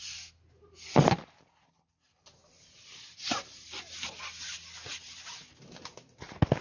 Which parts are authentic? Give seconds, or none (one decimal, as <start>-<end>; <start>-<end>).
0.0-6.6